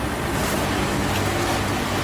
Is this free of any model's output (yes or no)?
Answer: yes